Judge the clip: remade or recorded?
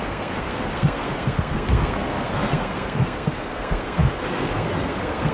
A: remade